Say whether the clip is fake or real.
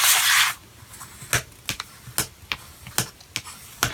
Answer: real